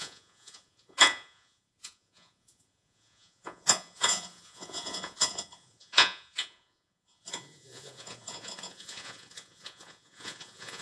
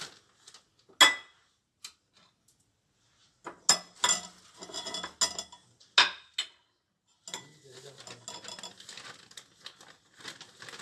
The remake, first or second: first